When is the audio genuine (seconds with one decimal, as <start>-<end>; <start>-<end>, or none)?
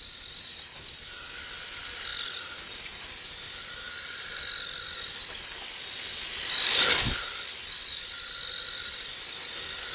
0.0-9.9